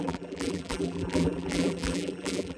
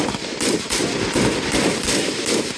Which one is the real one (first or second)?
second